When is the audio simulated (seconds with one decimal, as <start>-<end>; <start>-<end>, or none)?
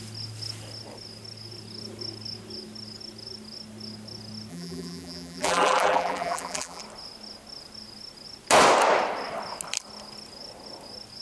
4.5-6.8